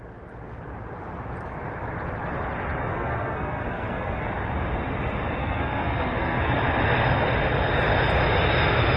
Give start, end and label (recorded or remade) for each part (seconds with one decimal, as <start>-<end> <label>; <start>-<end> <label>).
0.0-2.9 recorded; 2.9-4.3 remade; 4.3-5.4 recorded; 5.4-6.5 remade; 6.5-9.0 recorded